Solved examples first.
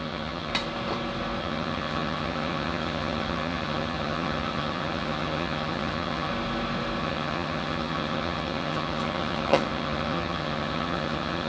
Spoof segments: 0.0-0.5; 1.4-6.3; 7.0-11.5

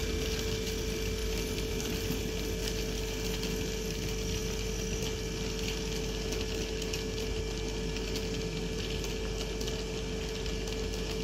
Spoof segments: 1.2-2.2

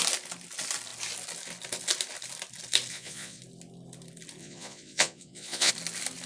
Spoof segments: 2.9-3.4; 4.4-5.7

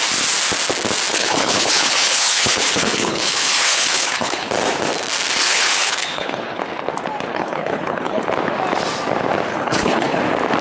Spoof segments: 1.1-4.5; 5.4-6.6; 7.3-8.2; 9.5-10.2

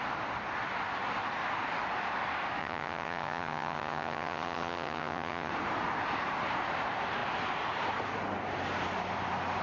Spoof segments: 2.6-5.5

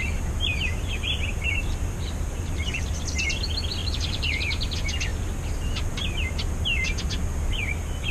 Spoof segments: 0.5-3.0; 3.8-4.4